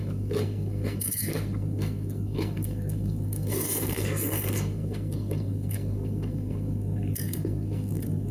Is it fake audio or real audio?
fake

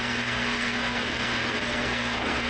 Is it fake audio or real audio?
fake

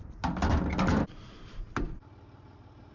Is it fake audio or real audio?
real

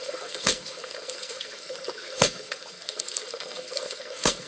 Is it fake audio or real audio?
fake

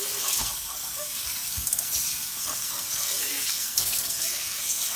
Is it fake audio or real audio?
fake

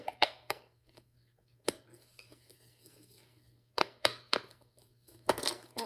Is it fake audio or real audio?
fake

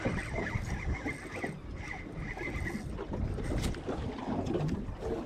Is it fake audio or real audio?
real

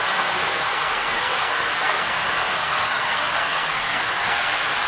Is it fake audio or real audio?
fake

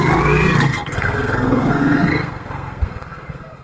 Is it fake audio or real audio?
fake